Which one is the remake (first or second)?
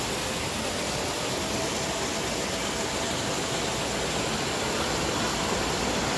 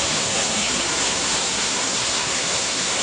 second